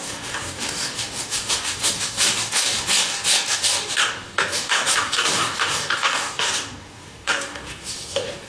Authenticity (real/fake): fake